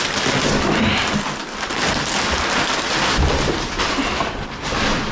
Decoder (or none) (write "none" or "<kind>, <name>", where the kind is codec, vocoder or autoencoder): none